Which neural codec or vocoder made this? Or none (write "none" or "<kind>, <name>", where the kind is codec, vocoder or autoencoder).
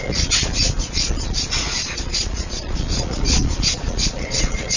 vocoder, Vocos